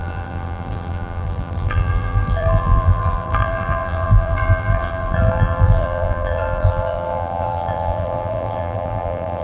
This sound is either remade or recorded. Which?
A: remade